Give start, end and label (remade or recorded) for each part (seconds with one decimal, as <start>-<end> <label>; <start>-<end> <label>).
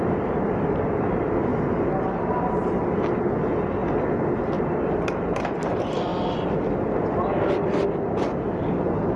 0.0-9.2 recorded